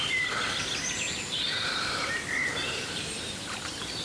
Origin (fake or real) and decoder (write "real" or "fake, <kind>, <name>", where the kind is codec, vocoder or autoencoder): fake, vocoder, BigVGAN v2